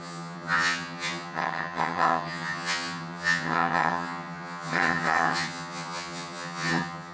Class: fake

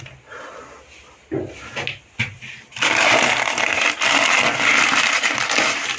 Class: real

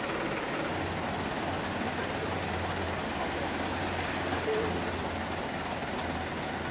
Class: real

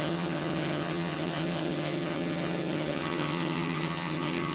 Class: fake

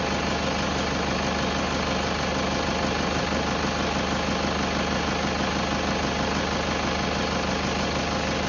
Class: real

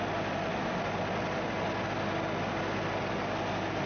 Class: real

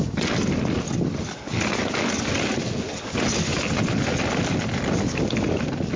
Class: real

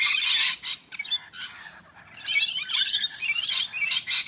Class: real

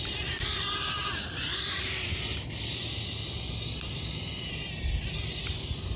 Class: real